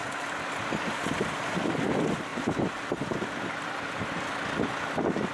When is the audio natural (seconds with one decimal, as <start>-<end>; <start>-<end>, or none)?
0.0-5.3